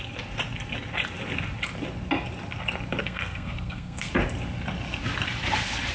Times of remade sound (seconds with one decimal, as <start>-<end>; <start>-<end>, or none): 3.0-4.1